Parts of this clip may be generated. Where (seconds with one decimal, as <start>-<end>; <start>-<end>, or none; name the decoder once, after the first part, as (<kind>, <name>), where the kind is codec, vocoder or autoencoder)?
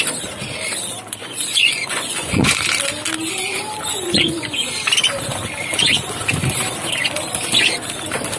1.2-2.7 (vocoder, Vocos); 3.9-4.7